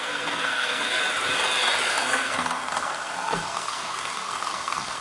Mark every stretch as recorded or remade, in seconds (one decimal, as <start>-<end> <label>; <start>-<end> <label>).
0.0-1.0 remade; 1.0-1.9 recorded; 1.9-5.0 remade